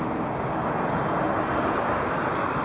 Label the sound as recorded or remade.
recorded